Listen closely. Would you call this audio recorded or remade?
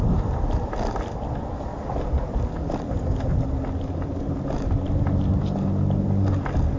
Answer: recorded